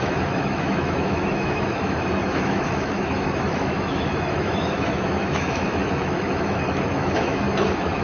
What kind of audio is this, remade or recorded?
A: remade